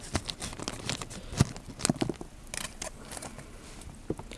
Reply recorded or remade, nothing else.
recorded